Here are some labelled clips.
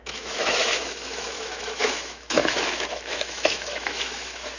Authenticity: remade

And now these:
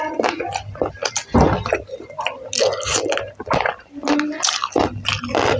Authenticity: recorded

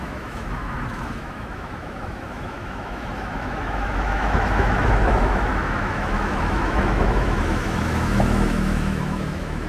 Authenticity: remade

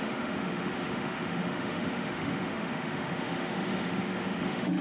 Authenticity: remade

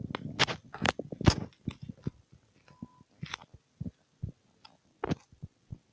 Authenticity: recorded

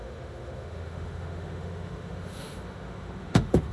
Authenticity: remade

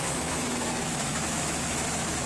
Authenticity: remade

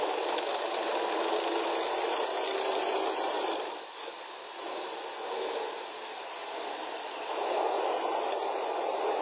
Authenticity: recorded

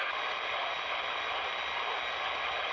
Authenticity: recorded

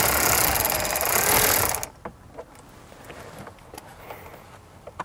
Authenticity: recorded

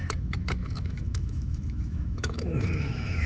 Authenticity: remade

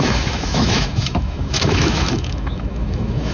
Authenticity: remade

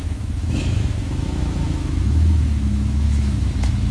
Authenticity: remade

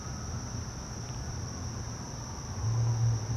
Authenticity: recorded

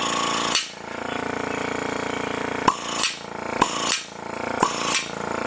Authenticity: recorded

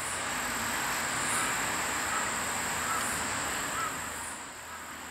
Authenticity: recorded